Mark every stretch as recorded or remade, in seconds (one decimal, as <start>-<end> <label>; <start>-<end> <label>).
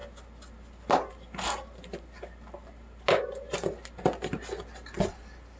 0.0-5.6 recorded